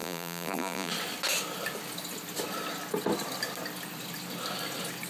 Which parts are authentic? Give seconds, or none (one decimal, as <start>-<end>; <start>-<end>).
0.9-5.1